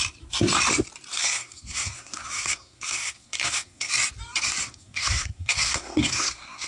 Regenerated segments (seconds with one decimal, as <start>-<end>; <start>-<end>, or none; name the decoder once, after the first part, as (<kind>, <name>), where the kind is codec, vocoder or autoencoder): 1.1-3.9 (codec, SNAC); 4.6-6.7